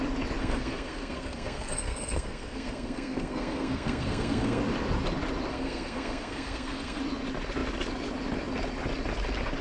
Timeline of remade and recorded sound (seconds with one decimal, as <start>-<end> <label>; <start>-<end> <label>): 0.0-0.4 recorded; 0.4-4.6 remade; 4.6-5.5 recorded; 5.5-7.0 remade; 7.0-9.6 recorded